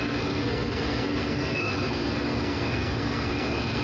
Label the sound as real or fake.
fake